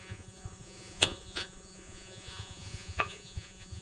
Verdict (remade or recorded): remade